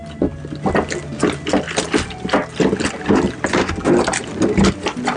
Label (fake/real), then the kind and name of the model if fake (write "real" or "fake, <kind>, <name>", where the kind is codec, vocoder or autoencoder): real